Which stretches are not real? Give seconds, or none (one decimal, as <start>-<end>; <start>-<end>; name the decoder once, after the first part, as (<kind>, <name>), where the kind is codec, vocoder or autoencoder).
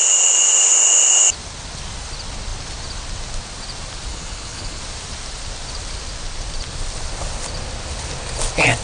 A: 4.1-4.8 (codec, HILCodec)